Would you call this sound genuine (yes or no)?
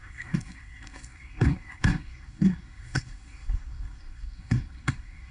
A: no